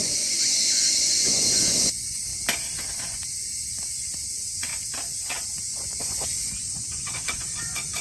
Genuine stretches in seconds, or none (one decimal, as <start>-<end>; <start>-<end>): 2.3-3.0; 4.7-5.5